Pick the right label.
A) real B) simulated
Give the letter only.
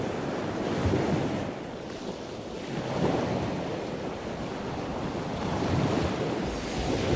A